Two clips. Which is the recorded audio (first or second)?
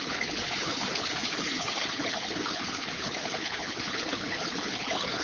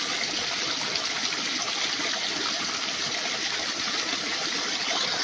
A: second